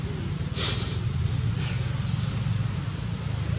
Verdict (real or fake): real